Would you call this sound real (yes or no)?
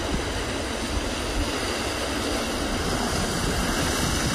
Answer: yes